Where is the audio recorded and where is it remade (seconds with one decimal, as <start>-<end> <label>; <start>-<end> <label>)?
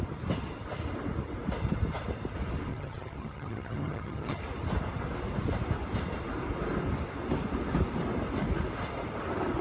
0.0-2.7 recorded; 2.7-4.4 remade; 4.4-9.6 recorded